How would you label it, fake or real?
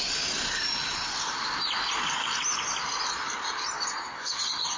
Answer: real